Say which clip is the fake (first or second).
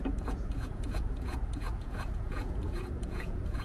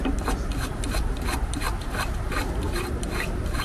first